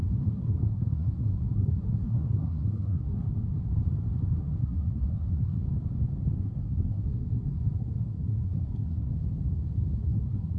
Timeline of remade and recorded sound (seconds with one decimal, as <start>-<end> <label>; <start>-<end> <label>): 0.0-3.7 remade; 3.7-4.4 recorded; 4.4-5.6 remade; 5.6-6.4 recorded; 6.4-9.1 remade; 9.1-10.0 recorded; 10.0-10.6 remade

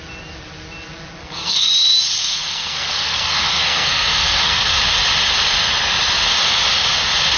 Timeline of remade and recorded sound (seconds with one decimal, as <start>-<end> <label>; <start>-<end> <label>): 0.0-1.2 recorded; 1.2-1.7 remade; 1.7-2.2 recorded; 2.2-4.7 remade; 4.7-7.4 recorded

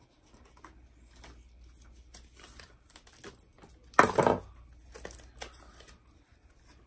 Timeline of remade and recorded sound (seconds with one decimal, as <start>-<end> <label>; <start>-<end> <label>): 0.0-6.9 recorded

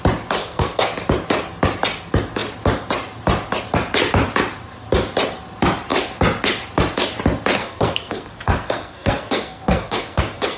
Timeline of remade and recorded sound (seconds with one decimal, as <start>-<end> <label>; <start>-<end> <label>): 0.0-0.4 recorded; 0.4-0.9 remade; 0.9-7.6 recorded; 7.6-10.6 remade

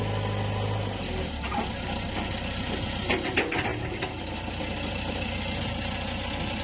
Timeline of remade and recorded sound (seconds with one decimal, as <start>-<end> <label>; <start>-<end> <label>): 0.0-6.6 recorded